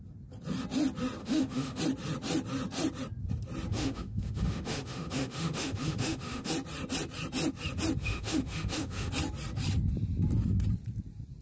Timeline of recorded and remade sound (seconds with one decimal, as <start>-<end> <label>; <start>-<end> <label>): 0.0-1.2 recorded; 1.2-1.8 remade; 1.8-3.7 recorded; 3.7-6.5 remade; 6.5-8.0 recorded; 8.0-9.1 remade; 9.1-11.4 recorded